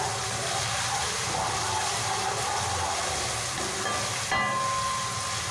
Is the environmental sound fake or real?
real